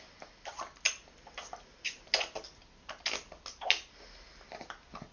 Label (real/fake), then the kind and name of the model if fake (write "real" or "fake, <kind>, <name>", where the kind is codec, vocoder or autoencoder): real